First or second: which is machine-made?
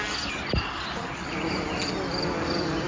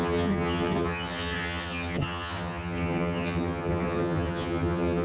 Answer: second